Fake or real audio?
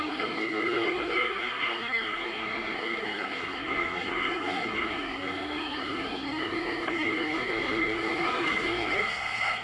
fake